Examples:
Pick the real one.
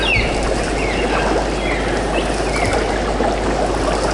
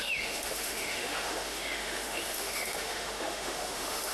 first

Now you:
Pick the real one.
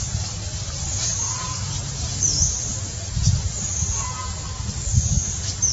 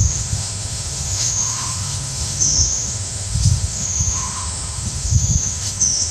first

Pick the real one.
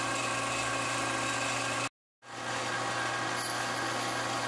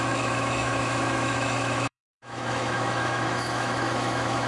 first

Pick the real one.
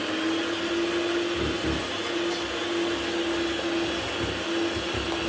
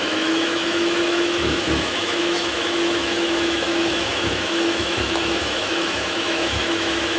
first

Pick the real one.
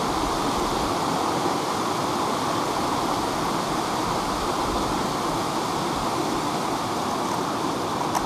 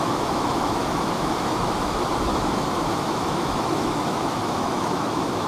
first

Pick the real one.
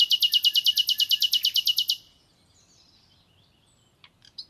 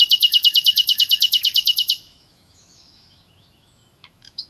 first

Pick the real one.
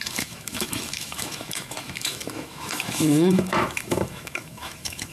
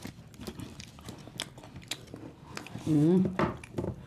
second